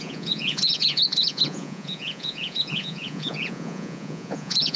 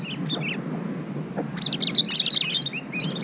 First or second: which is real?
second